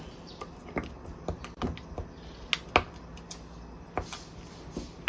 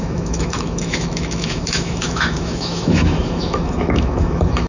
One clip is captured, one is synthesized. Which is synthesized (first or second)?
second